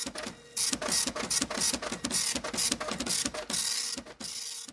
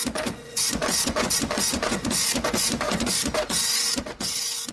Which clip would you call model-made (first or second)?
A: second